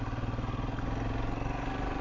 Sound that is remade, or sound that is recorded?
recorded